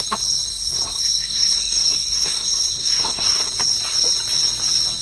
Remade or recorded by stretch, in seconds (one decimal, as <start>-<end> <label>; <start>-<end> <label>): 0.0-0.5 recorded; 0.5-3.5 remade; 3.5-5.0 recorded